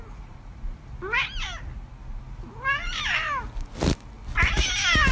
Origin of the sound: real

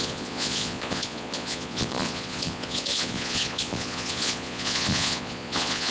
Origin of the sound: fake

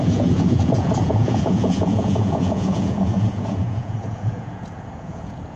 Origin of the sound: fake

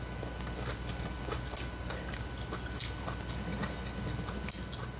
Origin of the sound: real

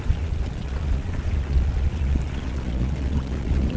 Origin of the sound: fake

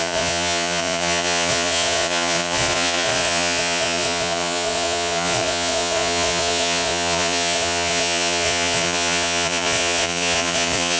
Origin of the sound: fake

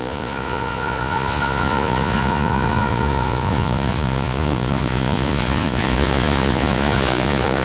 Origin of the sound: fake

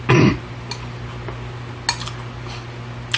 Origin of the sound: real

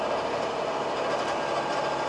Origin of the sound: real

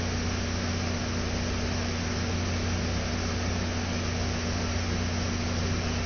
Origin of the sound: real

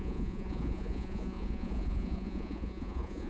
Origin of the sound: fake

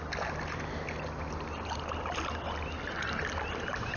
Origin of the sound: real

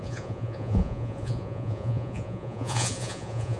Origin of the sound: fake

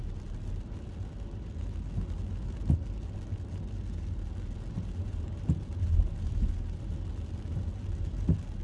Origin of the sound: real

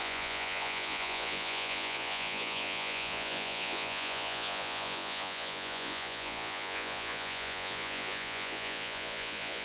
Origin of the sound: fake